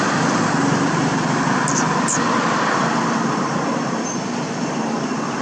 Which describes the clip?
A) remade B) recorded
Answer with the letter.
B